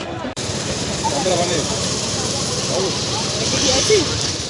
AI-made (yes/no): yes